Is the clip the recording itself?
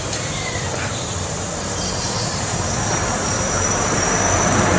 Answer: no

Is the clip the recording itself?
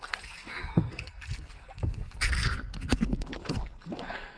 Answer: no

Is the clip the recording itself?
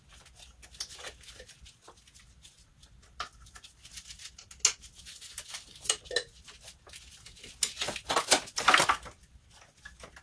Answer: yes